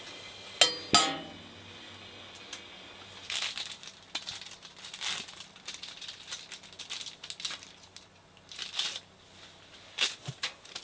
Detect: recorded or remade recorded